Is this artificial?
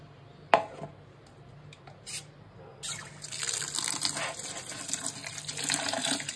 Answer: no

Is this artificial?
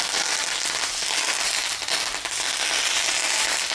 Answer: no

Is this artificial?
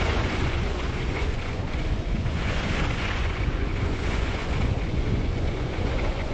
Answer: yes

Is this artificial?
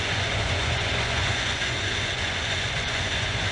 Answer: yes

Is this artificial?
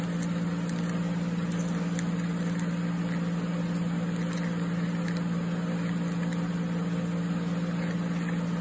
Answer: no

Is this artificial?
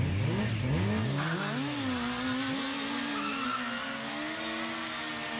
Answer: no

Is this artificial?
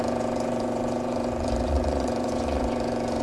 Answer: yes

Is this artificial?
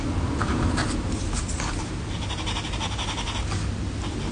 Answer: no